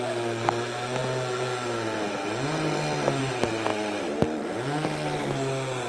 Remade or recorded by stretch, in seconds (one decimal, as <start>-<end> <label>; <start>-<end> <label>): 0.0-5.9 recorded